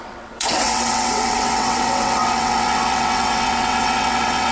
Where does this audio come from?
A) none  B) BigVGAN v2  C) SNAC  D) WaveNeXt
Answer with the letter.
D